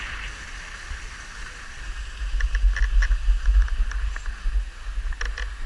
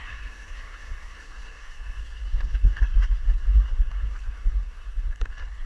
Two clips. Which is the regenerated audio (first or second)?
second